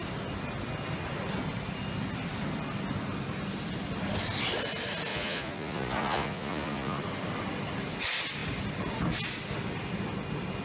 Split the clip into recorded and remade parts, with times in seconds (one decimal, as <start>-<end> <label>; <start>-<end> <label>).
0.0-5.1 recorded; 5.1-7.0 remade; 7.0-10.6 recorded